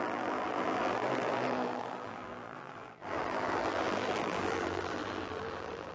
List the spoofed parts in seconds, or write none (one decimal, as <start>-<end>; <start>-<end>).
0.0-5.9